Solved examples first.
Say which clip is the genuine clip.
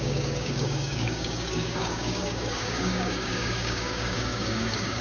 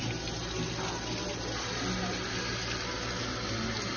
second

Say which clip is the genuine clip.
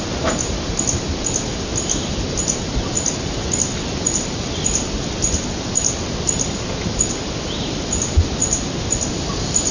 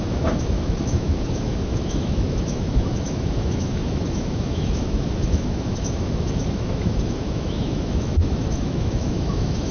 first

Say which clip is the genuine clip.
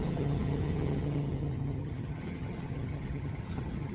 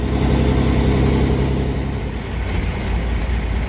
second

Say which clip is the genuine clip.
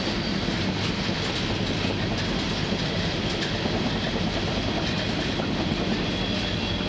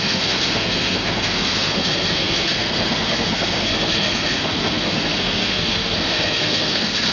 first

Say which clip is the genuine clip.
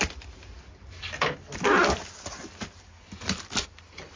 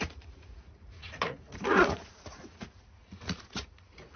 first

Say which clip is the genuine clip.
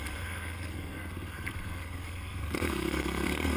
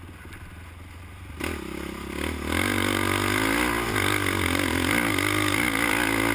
second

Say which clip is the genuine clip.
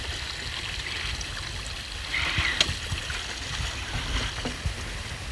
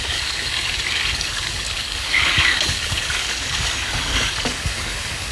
first